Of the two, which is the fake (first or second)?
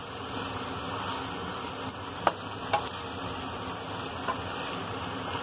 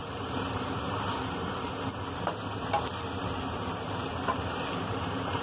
second